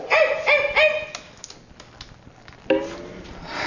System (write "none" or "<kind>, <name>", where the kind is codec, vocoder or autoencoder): none